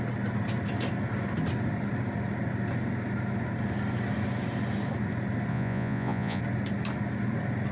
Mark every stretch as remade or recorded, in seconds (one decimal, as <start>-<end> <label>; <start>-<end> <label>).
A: 0.0-5.5 recorded; 5.5-6.4 remade; 6.4-7.7 recorded

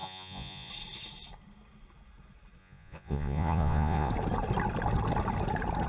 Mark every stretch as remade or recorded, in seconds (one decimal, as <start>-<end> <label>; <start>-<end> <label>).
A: 0.0-0.7 remade; 0.7-2.6 recorded; 2.6-4.1 remade; 4.1-5.9 recorded